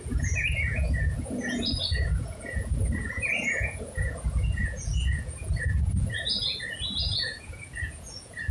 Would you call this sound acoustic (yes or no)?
no